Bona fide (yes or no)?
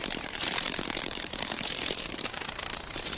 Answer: no